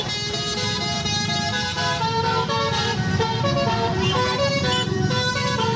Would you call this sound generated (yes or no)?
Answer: yes